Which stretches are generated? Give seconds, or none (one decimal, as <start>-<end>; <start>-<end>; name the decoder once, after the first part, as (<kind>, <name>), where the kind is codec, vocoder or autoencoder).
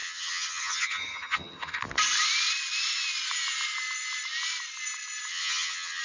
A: 0.0-1.8 (vocoder, HiFi-GAN); 5.3-6.0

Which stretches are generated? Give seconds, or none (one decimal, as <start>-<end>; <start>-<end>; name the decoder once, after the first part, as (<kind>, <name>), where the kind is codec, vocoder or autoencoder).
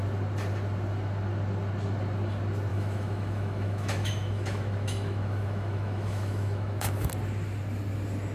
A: 2.7-7.1 (autoencoder, DAC-VAE)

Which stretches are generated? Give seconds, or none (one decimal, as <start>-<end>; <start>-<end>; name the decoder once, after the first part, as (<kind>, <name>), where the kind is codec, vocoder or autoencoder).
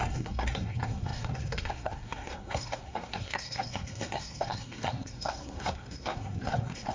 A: 0.0-6.9 (codec, SNAC)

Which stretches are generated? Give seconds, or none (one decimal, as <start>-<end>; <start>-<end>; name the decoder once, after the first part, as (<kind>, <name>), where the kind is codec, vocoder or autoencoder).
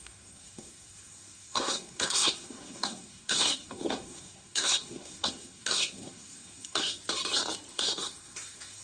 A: 0.0-7.0 (codec, SNAC); 7.7-8.8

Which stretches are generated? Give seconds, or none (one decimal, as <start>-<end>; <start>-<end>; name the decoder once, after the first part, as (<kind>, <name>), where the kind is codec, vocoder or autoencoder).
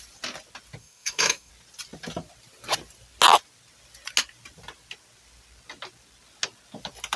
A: 0.8-1.5 (codec, SNAC)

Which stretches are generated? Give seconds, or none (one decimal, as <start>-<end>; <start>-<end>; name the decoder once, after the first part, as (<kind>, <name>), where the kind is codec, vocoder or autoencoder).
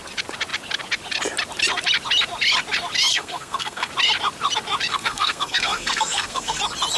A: 3.1-3.9 (codec, SNAC); 4.9-6.6